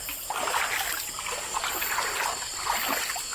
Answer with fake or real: real